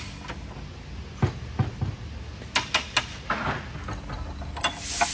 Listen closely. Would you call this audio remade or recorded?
recorded